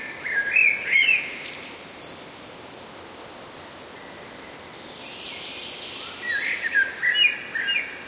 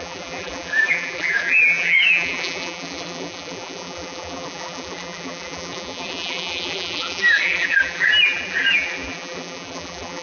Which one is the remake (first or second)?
second